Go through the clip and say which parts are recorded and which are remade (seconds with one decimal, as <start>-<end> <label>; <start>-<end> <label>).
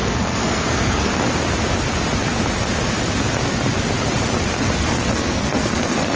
0.0-1.1 remade; 1.1-4.8 recorded; 4.8-6.2 remade